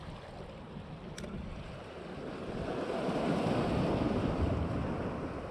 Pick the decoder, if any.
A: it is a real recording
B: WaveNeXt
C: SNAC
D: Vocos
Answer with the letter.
A